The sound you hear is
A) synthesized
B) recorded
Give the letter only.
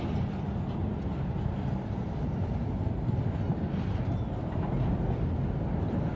B